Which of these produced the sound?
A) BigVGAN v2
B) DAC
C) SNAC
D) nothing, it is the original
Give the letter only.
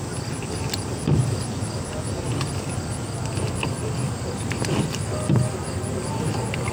D